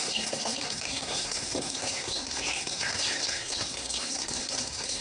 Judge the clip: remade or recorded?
remade